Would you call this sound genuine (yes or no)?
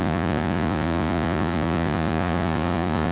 no